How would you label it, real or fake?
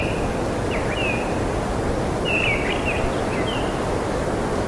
real